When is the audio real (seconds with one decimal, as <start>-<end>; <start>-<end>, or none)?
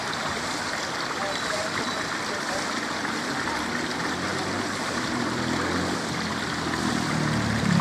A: 0.0-7.8